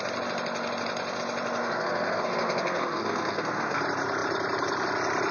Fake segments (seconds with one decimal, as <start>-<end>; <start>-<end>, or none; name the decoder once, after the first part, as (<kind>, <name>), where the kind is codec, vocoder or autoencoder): 1.6-3.8 (codec, SNAC)